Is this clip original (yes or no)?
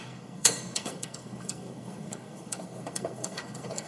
no